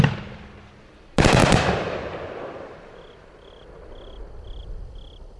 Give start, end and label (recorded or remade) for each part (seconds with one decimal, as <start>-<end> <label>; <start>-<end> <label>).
0.0-5.4 recorded